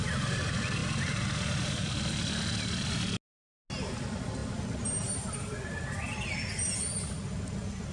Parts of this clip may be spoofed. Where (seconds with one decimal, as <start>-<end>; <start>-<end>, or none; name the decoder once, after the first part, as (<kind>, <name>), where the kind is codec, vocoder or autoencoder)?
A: none